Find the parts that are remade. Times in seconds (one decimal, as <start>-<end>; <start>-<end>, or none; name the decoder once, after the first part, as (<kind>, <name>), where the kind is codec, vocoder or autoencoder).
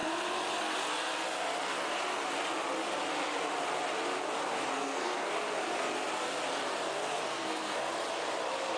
4.6-5.3 (codec, SNAC); 7.1-7.9